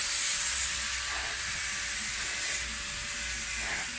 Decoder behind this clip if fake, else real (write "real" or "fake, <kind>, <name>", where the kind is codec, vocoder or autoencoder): fake, vocoder, BigVGAN v2